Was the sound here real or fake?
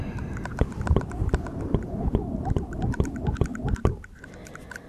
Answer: real